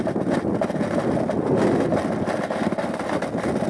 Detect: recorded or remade recorded